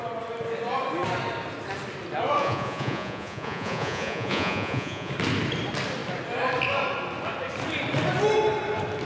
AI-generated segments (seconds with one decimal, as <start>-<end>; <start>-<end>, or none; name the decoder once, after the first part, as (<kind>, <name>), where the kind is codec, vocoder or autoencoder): 2.4-5.1 (vocoder, Vocos)